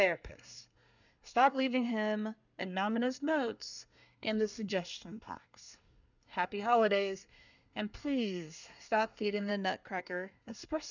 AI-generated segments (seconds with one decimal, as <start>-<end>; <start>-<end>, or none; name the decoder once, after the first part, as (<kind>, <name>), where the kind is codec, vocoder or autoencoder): 0.0-1.9 (codec, SNAC); 2.6-9.5; 10.0-10.9